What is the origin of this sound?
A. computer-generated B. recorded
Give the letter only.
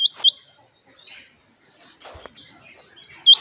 B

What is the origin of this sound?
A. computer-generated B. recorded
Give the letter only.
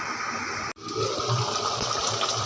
B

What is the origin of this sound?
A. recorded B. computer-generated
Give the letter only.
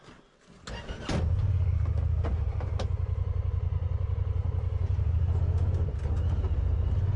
A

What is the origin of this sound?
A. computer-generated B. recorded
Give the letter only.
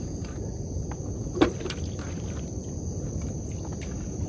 B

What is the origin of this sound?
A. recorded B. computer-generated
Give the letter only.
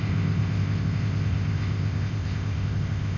B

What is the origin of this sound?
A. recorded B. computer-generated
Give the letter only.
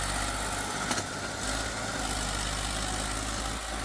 A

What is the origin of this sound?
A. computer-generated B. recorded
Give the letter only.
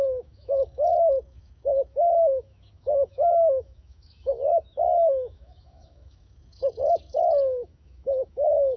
A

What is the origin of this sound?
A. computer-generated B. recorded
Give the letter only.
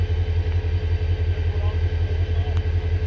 B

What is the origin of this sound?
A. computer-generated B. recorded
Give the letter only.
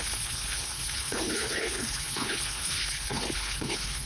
A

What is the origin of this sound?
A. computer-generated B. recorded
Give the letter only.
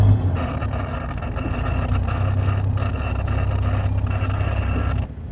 B